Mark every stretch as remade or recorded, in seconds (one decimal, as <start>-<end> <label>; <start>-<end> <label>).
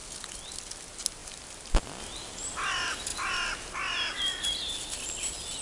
0.0-5.6 recorded